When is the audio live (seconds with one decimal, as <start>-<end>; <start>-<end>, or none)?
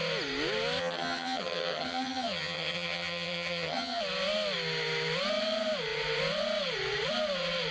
0.0-0.8; 4.0-7.7